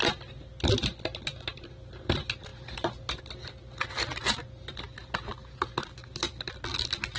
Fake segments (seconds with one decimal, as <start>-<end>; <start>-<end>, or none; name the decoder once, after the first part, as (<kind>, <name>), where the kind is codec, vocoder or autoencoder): none